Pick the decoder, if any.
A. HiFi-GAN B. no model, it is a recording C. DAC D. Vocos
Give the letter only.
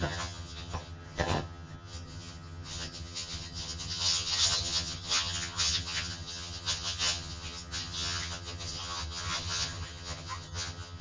A